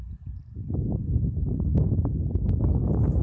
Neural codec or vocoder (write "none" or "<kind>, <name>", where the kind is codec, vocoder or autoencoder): none